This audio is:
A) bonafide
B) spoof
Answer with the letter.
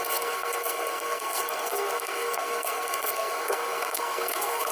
B